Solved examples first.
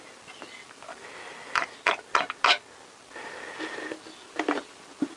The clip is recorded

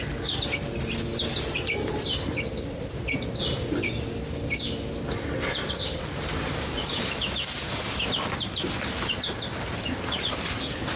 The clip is recorded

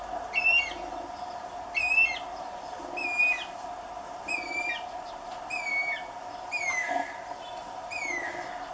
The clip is recorded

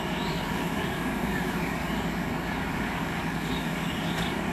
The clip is remade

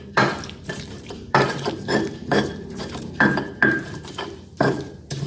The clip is remade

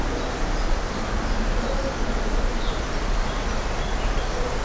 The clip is recorded